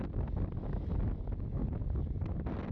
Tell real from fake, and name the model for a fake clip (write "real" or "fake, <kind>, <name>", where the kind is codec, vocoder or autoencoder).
real